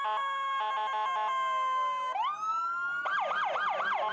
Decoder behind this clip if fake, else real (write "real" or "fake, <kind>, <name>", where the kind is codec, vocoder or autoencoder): real